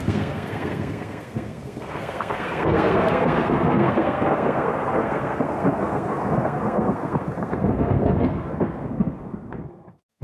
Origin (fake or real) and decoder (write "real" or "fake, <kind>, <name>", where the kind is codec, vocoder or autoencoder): fake, codec, SNAC